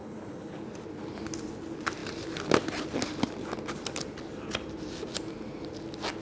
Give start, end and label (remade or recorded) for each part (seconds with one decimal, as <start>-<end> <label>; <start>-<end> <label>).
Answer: 0.0-0.6 remade; 0.6-6.2 recorded